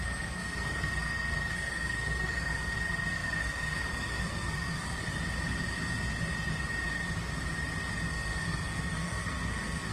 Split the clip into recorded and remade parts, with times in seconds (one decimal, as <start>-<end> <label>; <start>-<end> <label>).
0.0-5.0 remade; 5.0-8.1 recorded; 8.1-9.9 remade